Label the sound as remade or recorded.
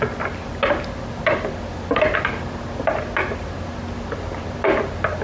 recorded